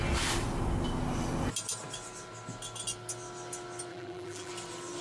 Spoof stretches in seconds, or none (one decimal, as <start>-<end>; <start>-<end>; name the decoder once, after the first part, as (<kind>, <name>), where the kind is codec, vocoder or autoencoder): 3.9-4.5 (vocoder, BigVGAN v2)